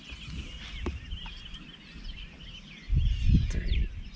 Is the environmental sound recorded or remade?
recorded